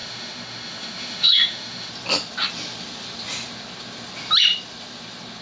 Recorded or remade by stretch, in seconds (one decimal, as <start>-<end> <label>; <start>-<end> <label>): 0.0-1.9 remade; 1.9-5.4 recorded